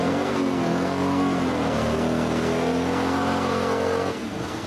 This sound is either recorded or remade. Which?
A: remade